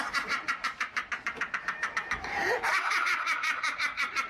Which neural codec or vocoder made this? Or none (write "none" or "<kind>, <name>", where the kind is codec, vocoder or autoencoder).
vocoder, BigVGAN v2